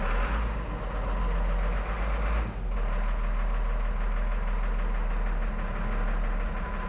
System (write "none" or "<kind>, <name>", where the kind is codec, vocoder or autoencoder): none